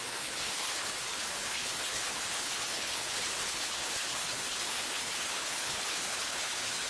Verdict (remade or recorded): remade